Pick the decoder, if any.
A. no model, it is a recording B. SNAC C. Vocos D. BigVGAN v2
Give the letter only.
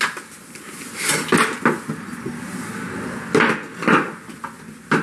A